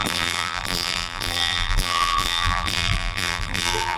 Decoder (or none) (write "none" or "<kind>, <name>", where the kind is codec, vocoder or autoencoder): vocoder, BigVGAN v2